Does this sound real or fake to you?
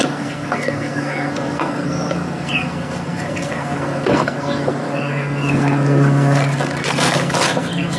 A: fake